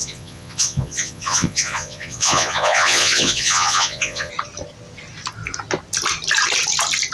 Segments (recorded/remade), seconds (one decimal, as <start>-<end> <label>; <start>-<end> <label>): 0.0-4.3 remade; 4.3-7.1 recorded